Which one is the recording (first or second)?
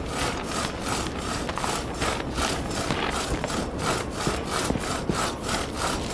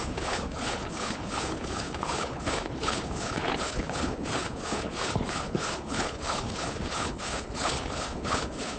first